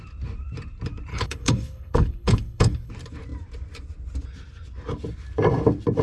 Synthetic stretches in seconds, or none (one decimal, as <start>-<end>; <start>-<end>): 1.1-2.9